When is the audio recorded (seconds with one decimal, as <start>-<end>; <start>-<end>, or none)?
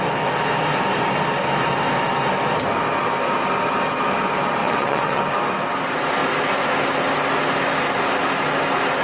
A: 0.0-4.6; 5.2-9.0